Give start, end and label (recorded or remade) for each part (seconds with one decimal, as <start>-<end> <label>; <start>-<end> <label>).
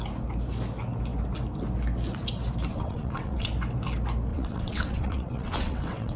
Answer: 0.0-2.7 recorded; 2.7-3.5 remade; 3.5-4.3 recorded; 4.3-6.2 remade